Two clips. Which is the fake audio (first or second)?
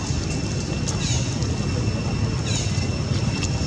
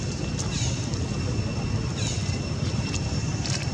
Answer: second